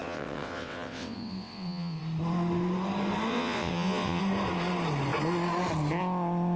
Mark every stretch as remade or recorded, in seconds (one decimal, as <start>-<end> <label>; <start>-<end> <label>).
0.0-2.0 remade; 2.0-3.3 recorded; 3.3-4.2 remade; 4.2-6.6 recorded